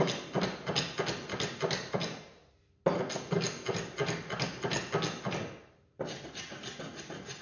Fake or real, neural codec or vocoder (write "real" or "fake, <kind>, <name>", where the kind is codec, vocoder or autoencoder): real